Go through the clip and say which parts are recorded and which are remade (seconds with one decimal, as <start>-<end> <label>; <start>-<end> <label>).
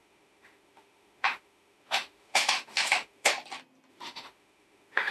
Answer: 0.0-3.3 remade; 3.3-3.9 recorded; 3.9-5.1 remade